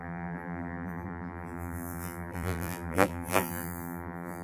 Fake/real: fake